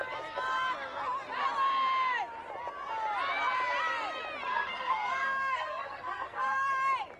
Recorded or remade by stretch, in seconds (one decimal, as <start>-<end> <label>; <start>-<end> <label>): 0.0-4.5 recorded; 4.5-6.7 remade; 6.7-7.2 recorded